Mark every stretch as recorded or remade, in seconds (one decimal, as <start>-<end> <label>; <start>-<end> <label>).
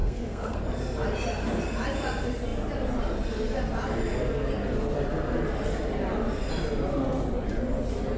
0.0-0.6 remade; 0.6-8.2 recorded